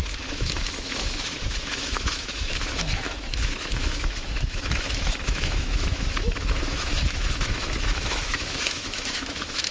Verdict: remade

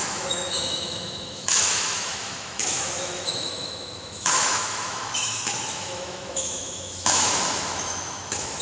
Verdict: remade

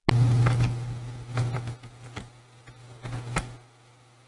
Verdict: recorded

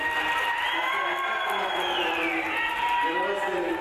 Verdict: recorded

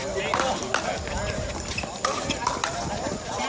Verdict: recorded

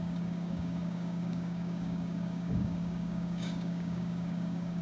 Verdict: remade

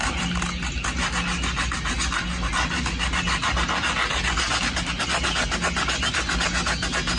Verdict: recorded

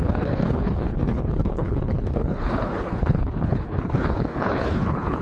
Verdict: remade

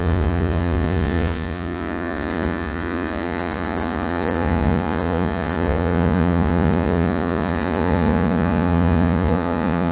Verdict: remade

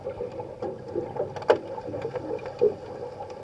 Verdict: recorded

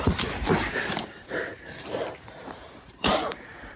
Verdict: remade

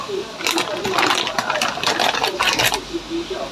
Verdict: recorded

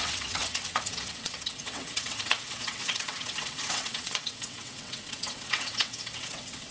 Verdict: remade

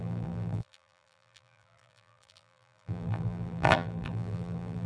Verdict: remade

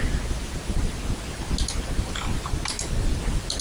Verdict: recorded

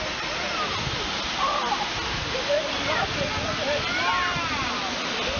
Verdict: recorded